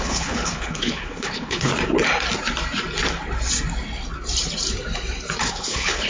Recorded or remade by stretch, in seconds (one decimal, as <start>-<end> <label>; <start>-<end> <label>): 0.0-1.7 remade; 1.7-5.4 recorded; 5.4-6.1 remade